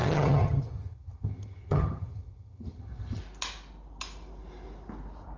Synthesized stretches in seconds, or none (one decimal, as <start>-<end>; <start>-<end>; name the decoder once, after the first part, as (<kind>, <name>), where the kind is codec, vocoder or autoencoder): 0.0-3.2 (vocoder, HiFi-GAN)